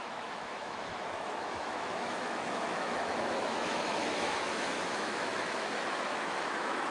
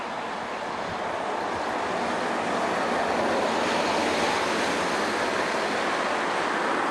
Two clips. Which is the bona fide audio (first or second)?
second